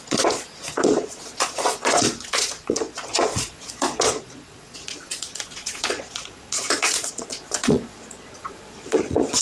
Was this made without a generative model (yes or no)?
no